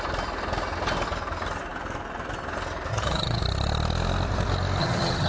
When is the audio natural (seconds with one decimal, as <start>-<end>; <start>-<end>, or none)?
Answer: 0.0-2.9; 3.4-4.8